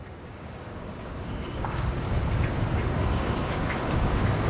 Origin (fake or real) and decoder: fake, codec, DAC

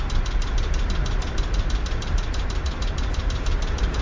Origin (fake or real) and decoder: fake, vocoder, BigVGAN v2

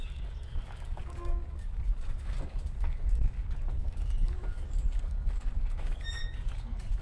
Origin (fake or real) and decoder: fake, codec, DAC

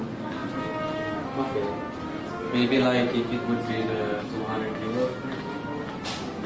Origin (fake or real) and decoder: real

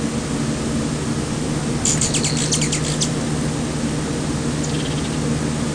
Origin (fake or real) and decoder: real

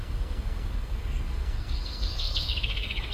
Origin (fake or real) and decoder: fake, codec, SNAC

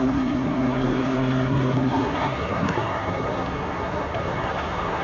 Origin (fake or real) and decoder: fake, codec, SNAC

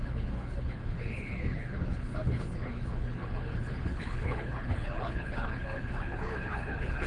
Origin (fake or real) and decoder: fake, codec, HILCodec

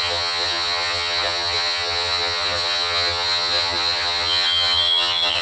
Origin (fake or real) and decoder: fake, vocoder, HiFi-GAN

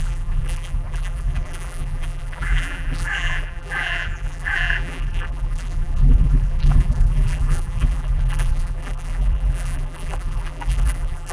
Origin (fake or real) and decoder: fake, vocoder, BigVGAN v2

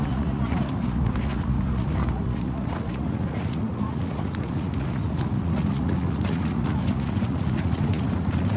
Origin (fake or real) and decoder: fake, vocoder, Vocos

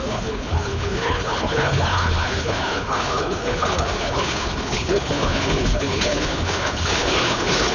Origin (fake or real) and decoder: fake, codec, HILCodec